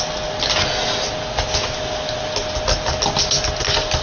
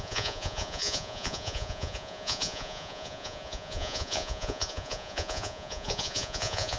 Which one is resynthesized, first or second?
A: second